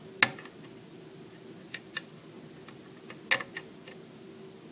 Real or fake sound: real